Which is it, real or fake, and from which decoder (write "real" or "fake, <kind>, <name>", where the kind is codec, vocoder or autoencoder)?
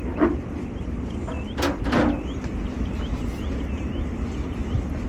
real